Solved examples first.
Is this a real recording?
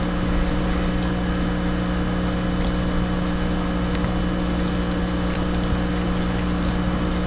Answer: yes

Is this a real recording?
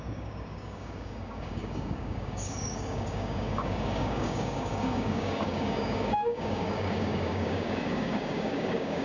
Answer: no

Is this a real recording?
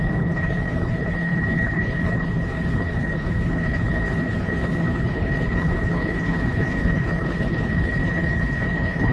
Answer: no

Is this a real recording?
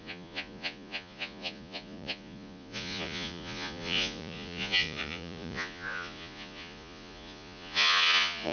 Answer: no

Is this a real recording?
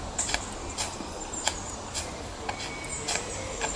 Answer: yes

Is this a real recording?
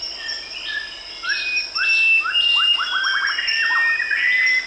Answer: yes